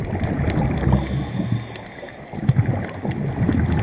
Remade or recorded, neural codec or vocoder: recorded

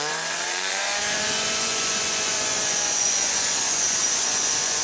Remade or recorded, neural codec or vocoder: remade, vocoder, Vocos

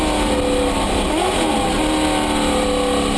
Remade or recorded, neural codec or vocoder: recorded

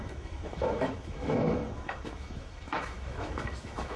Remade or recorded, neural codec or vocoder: remade, autoencoder, DAC-VAE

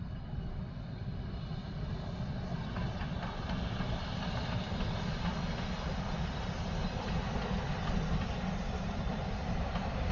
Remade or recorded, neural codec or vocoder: recorded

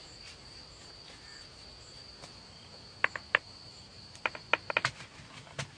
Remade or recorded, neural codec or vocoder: recorded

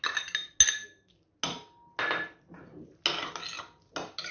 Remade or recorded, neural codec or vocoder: recorded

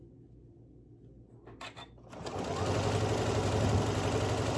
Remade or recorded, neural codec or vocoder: recorded